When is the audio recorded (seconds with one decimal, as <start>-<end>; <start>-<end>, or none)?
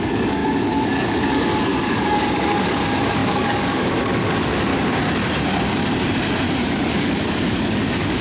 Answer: 4.7-6.6